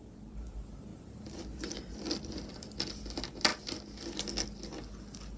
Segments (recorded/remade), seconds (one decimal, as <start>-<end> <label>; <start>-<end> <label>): 0.0-5.4 recorded